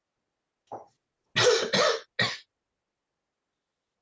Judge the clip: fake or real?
real